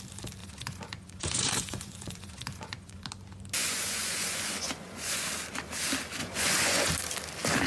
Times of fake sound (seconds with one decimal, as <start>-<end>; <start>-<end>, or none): 0.4-3.0; 3.6-5.2; 6.2-6.9